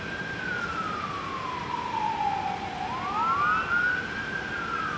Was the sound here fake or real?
real